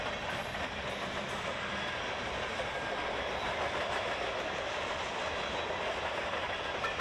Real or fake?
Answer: real